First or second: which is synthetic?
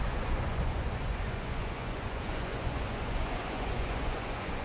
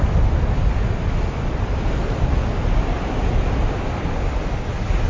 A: first